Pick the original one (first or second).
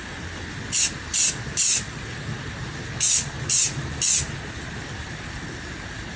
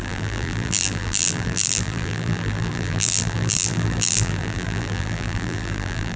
first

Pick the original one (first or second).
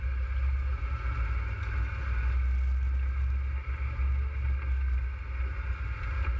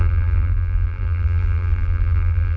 first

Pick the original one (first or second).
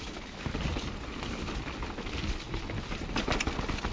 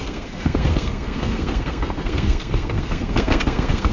first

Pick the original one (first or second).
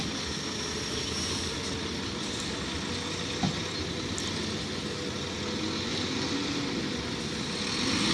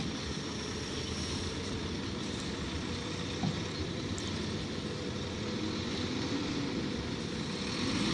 first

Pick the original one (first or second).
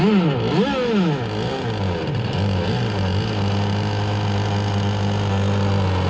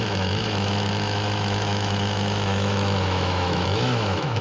first